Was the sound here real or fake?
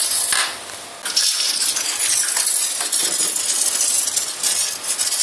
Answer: real